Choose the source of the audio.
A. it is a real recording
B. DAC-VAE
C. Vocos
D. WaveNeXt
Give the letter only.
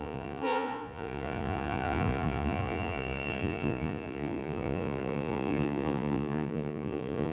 C